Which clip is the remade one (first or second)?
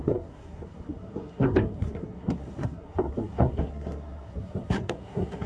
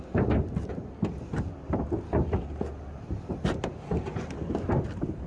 first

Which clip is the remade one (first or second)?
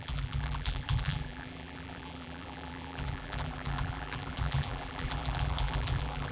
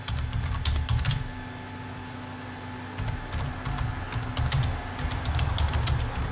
first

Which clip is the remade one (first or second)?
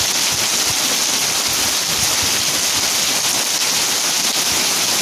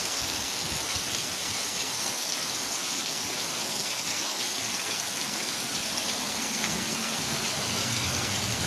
second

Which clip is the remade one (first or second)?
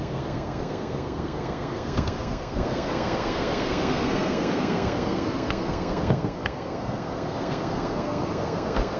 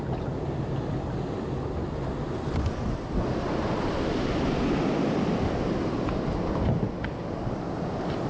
first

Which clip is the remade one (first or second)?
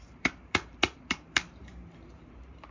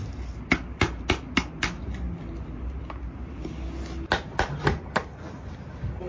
first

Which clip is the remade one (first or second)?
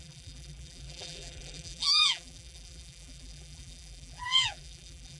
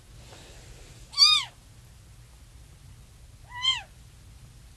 first